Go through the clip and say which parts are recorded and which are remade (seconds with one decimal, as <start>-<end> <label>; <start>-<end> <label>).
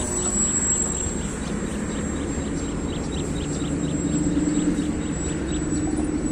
0.0-6.3 recorded